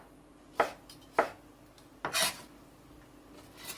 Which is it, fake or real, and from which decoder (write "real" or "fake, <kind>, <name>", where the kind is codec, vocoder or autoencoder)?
real